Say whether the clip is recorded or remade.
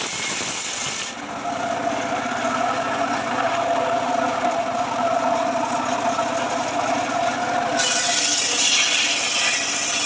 recorded